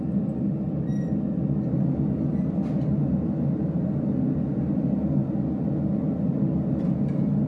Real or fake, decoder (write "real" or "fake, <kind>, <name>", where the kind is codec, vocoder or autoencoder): real